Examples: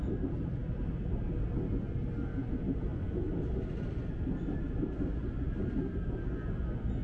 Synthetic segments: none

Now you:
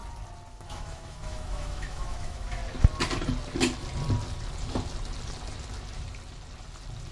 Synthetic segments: 0.5-2.6 (autoencoder, DAC-VAE)

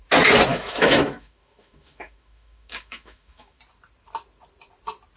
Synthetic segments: 0.5-3.6 (autoencoder, DAC-VAE)

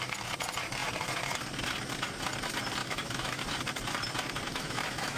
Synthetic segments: 2.8-3.4 (autoencoder, DAC-VAE); 4.5-5.2

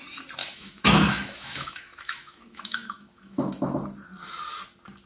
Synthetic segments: 0.4-3.5 (autoencoder, DAC-VAE)

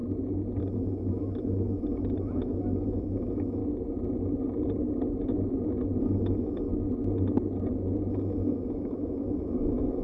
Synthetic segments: 0.6-3.6 (autoencoder, DAC-VAE); 6.0-6.7; 8.1-10.0